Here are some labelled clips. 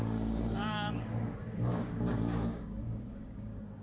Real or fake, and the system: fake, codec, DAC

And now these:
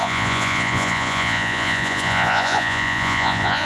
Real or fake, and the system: fake, vocoder, Vocos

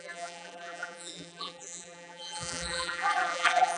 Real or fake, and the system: fake, vocoder, BigVGAN v2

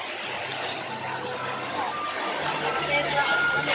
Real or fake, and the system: real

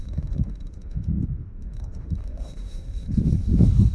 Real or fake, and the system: fake, autoencoder, DAC-VAE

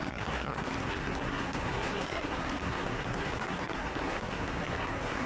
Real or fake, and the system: fake, codec, SNAC